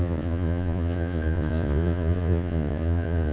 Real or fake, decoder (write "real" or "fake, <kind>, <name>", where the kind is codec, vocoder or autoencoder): fake, vocoder, Vocos